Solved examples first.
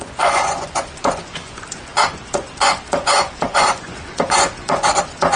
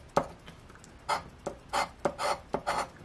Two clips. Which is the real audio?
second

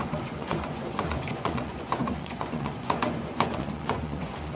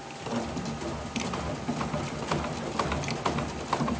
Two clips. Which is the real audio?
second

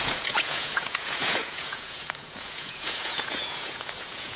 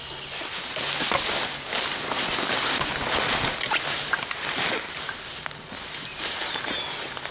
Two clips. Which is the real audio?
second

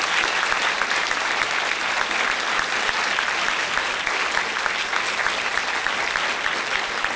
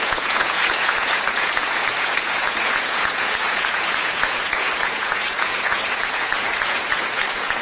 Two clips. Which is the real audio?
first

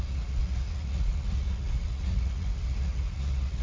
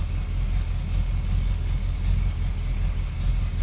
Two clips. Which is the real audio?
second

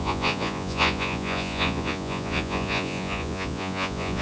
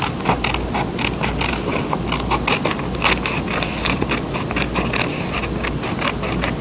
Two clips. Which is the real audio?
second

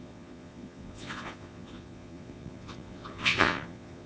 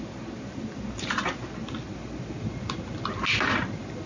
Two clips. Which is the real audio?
second